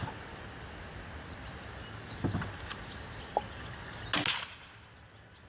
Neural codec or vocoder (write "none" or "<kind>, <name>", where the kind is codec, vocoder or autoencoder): none